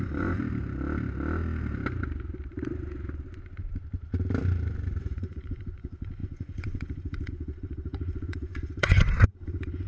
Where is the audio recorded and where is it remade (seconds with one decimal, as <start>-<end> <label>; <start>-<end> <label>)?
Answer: 0.0-0.4 remade; 0.4-5.0 recorded; 5.0-9.9 remade

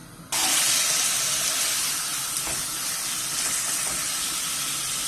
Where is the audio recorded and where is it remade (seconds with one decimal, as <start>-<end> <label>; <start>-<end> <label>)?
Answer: 0.0-5.1 recorded

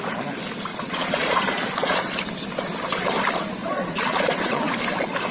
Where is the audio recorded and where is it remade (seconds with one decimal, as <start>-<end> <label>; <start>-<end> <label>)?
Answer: 0.0-0.7 recorded; 0.7-2.1 remade; 2.1-3.6 recorded; 3.6-4.7 remade; 4.7-5.3 recorded

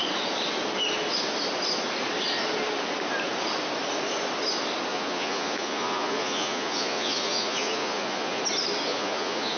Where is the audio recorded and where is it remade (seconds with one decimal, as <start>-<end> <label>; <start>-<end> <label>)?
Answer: 0.0-4.9 recorded; 4.9-8.4 remade; 8.4-8.9 recorded; 8.9-9.6 remade

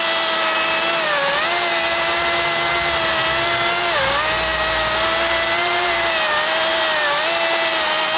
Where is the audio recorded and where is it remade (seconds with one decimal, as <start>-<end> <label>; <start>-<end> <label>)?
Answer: 0.0-8.2 recorded